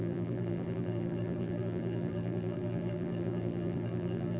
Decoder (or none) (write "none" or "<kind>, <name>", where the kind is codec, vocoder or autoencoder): vocoder, BigVGAN v2